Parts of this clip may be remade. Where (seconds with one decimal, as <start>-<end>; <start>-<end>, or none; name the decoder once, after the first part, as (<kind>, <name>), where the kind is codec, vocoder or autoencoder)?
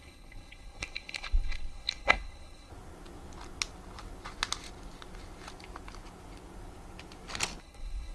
0.0-2.7 (codec, HILCodec); 7.6-8.1